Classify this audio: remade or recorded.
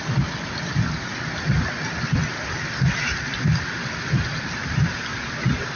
recorded